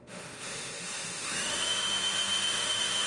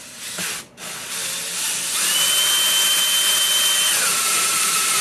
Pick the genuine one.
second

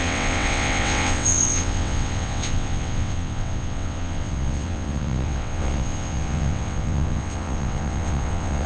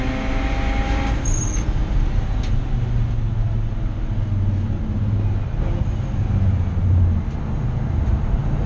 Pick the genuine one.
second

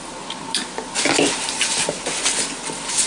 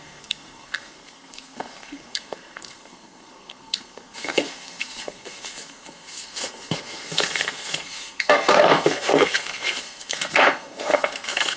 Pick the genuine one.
first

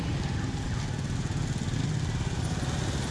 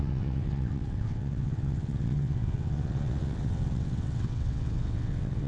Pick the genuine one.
first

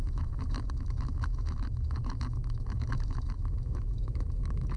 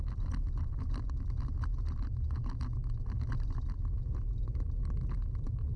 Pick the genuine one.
second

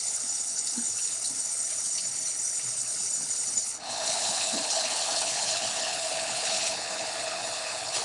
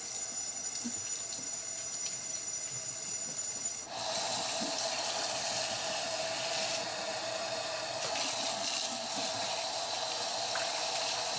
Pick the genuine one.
second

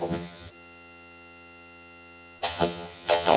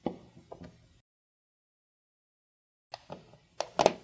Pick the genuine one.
second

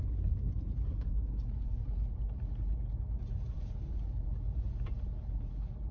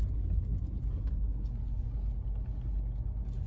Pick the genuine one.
second